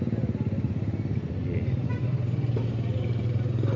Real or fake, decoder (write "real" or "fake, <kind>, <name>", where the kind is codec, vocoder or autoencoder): real